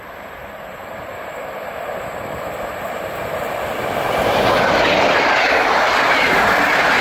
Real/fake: fake